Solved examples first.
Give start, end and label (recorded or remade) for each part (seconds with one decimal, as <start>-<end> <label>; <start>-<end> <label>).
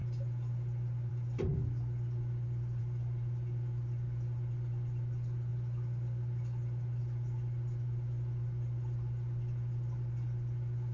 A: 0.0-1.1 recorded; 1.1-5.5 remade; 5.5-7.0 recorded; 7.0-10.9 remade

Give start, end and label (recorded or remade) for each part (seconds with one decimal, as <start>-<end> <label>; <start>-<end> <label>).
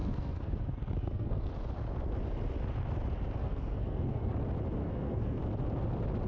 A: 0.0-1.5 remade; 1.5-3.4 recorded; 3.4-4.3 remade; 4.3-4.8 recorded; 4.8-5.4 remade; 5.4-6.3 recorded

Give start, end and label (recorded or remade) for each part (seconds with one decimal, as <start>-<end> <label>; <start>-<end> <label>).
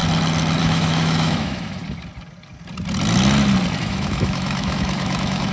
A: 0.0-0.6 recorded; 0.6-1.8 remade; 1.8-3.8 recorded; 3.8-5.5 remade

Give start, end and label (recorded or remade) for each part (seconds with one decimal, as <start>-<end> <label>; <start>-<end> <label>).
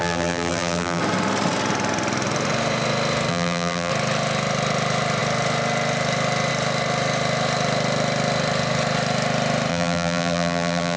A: 0.0-1.0 remade; 1.0-3.3 recorded; 3.3-3.9 remade; 3.9-9.7 recorded; 9.7-11.0 remade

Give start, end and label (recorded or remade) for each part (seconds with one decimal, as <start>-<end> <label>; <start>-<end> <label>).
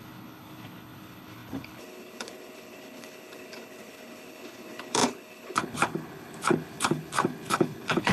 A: 0.0-8.1 remade